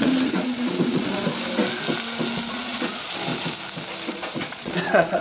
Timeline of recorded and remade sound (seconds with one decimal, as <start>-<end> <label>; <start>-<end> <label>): 0.0-1.2 remade; 1.2-2.5 recorded; 2.5-3.3 remade; 3.3-4.1 recorded; 4.1-5.2 remade